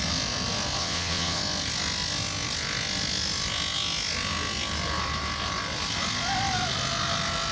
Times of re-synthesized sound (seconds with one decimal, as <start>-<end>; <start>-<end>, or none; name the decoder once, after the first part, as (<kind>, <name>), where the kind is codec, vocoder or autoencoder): 0.8-1.4 (vocoder, WaveNeXt)

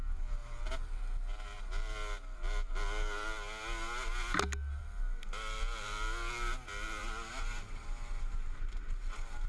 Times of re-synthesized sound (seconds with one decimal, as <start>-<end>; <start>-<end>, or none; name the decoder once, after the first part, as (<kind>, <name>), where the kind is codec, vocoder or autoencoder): none